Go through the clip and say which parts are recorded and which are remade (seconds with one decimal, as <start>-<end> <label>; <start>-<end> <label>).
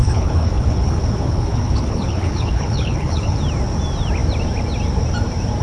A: 0.0-3.4 remade; 3.4-5.6 recorded